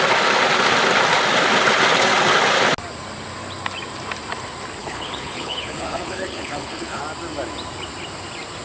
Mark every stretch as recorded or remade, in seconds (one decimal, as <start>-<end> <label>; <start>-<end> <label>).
0.0-4.8 recorded; 4.8-7.0 remade; 7.0-8.6 recorded